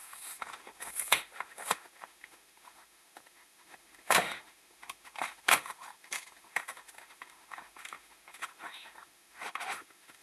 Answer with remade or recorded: remade